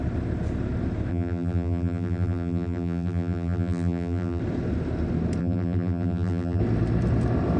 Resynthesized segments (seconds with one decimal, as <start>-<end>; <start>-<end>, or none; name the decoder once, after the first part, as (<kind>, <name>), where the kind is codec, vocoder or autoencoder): 1.1-4.4 (vocoder, BigVGAN v2); 5.4-6.6